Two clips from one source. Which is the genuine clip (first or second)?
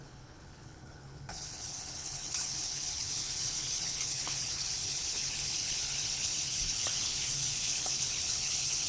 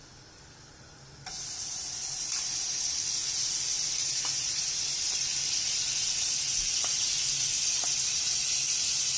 second